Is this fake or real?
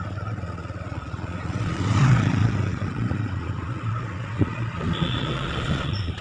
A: fake